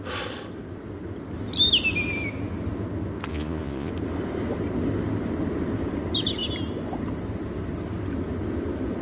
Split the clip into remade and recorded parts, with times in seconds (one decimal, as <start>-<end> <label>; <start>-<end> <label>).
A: 0.0-3.3 recorded; 3.3-3.9 remade; 3.9-9.0 recorded